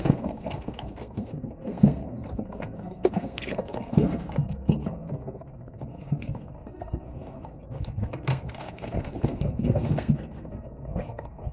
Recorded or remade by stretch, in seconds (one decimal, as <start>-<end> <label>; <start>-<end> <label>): 0.0-11.5 remade